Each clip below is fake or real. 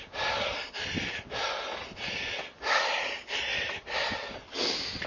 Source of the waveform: real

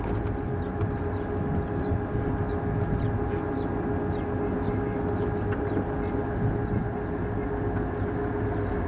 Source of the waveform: real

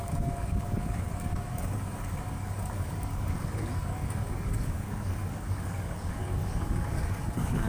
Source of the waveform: fake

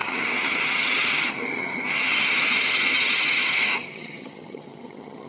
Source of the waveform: fake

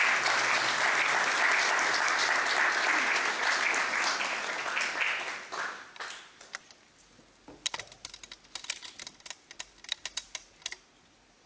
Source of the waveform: real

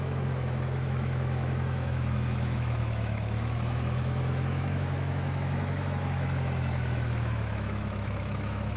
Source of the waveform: fake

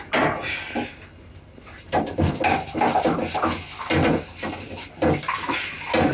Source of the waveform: real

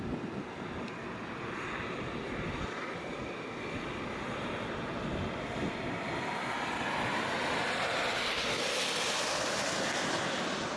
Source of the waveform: real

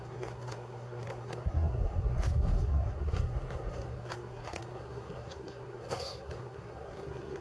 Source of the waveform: fake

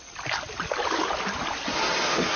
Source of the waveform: real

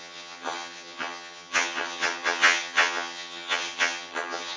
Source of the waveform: fake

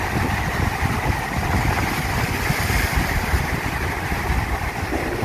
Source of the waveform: real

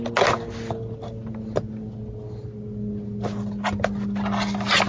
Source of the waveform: real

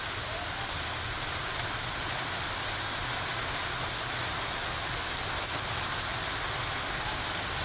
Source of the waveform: real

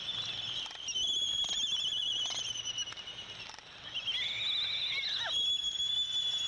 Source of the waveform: real